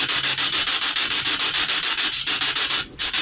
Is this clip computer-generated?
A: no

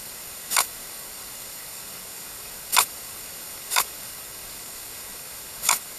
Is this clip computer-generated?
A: yes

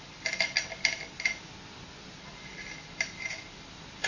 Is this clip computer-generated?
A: no